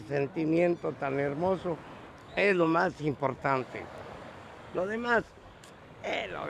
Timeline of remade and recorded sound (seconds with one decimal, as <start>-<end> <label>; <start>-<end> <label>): 0.0-2.2 recorded; 2.2-5.8 remade; 5.8-6.5 recorded